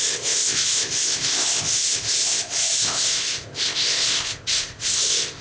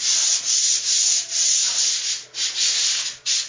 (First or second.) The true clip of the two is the second